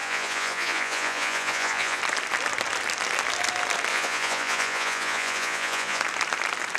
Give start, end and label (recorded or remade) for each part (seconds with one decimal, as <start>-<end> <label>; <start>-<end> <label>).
0.0-2.0 remade; 2.0-3.9 recorded; 3.9-6.0 remade; 6.0-6.8 recorded